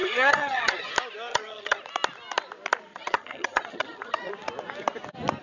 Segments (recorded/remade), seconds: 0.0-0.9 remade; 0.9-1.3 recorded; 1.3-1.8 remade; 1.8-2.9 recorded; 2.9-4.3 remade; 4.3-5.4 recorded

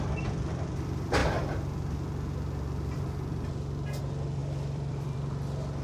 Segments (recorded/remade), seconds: 0.0-1.2 remade; 1.2-4.0 recorded; 4.0-5.8 remade

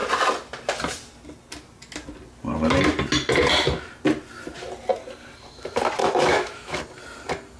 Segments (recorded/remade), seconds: 0.0-6.0 recorded; 6.0-6.8 remade; 6.8-7.6 recorded

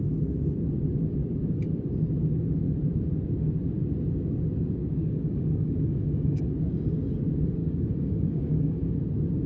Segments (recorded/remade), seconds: 0.0-4.8 recorded; 4.8-6.4 remade; 6.4-7.6 recorded; 7.6-8.9 remade; 8.9-9.5 recorded